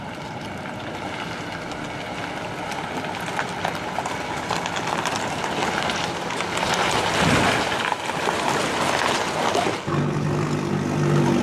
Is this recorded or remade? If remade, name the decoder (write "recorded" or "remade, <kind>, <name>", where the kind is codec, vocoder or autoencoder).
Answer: recorded